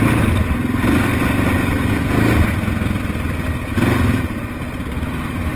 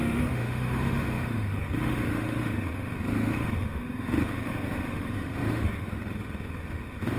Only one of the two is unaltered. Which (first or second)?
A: first